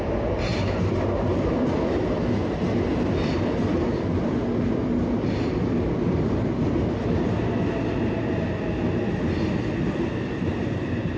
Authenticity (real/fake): real